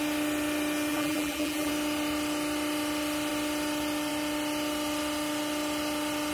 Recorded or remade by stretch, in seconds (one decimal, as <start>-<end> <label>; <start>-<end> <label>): 0.0-0.9 recorded; 0.9-1.7 remade; 1.7-6.3 recorded